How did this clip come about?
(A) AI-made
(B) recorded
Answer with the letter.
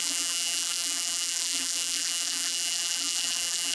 A